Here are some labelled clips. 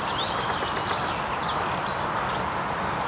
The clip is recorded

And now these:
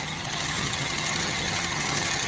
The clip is remade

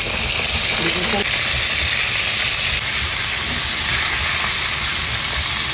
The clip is recorded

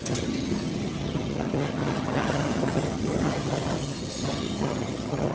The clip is remade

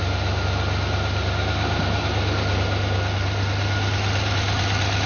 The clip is recorded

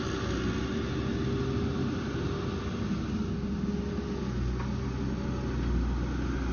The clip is recorded